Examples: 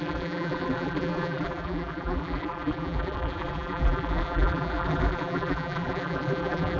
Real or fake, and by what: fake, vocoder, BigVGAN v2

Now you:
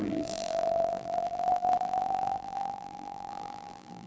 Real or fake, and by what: fake, vocoder, BigVGAN v2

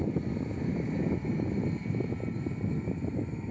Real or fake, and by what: real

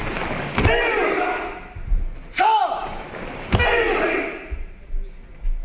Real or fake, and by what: real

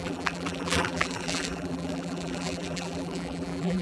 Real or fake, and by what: fake, vocoder, BigVGAN v2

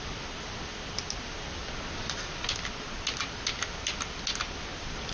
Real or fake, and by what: real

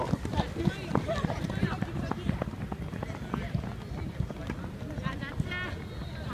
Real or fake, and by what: real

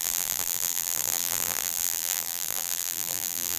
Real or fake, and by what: fake, vocoder, BigVGAN v2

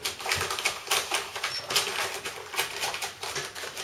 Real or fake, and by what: real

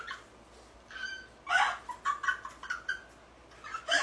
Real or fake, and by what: real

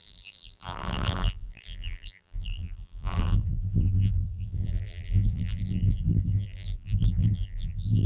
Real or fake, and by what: fake, vocoder, BigVGAN v2